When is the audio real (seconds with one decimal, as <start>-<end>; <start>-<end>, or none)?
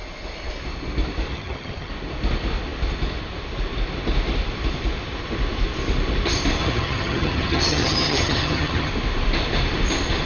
0.0-1.3; 1.9-6.6; 8.9-10.2